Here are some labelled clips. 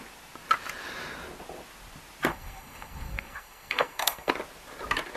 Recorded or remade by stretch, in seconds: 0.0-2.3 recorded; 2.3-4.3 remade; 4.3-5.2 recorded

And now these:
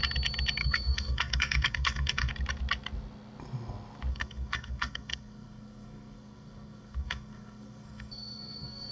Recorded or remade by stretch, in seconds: 0.0-0.6 recorded; 0.6-2.3 remade; 2.3-4.1 recorded; 4.1-8.9 remade

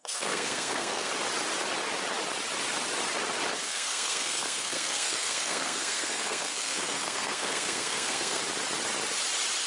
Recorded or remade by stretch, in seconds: 0.0-1.1 remade; 1.1-3.6 recorded; 3.6-8.4 remade; 8.4-9.7 recorded

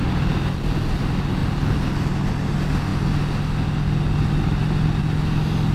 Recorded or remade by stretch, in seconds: 0.0-5.7 recorded

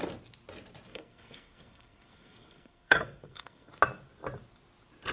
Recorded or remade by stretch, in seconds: 0.0-0.9 recorded; 0.9-3.7 remade; 3.7-5.1 recorded

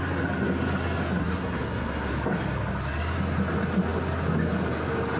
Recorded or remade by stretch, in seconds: 0.0-1.2 recorded; 1.2-2.1 remade; 2.1-5.2 recorded

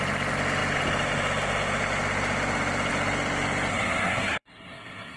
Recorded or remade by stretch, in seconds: 0.0-3.7 recorded; 3.7-5.2 remade

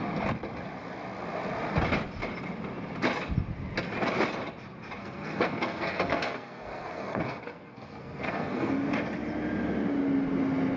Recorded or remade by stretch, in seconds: 0.0-5.0 recorded; 5.0-8.7 remade; 8.7-10.8 recorded